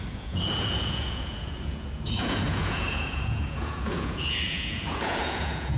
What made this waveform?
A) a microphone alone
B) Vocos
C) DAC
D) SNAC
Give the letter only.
B